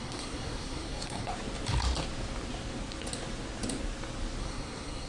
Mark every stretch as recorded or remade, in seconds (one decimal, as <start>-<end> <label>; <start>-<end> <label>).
0.0-1.3 remade; 1.3-4.4 recorded; 4.4-5.1 remade